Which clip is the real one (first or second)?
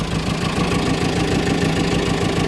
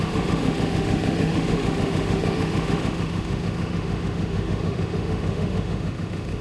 first